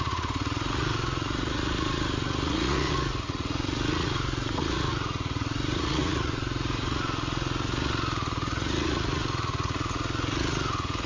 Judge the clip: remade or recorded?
remade